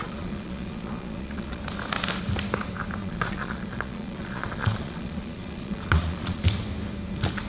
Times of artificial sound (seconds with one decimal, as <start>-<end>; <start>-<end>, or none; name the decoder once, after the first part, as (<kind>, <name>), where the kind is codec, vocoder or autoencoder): 0.0-1.6 (vocoder, Vocos); 3.0-6.4